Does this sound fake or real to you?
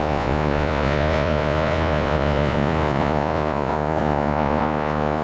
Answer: fake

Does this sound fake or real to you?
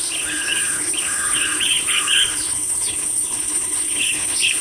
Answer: fake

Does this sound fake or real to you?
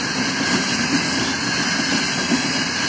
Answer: real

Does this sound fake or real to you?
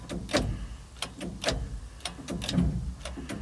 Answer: real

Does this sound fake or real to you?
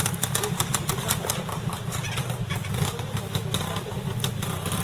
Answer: real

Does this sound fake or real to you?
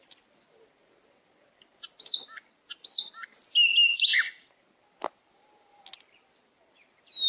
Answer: real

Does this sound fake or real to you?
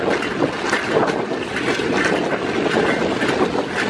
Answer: real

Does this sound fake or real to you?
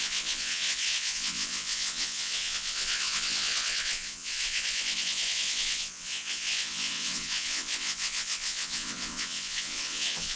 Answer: fake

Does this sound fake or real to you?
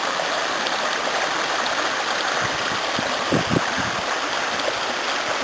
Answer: real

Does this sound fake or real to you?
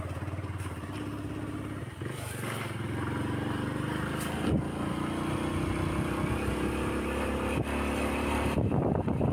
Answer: real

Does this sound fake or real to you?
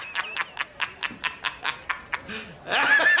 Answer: real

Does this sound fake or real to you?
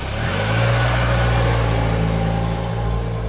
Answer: real